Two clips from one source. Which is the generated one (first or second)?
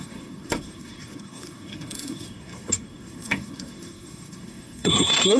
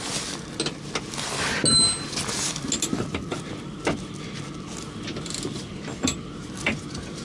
first